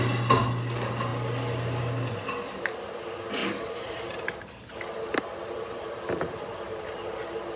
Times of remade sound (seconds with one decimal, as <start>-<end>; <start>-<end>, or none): 3.4-7.1